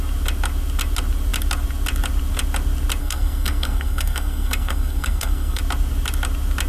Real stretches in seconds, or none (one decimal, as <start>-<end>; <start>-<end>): 0.0-3.0; 5.6-6.7